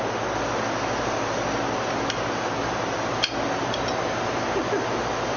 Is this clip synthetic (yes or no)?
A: no